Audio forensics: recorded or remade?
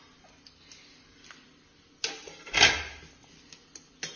recorded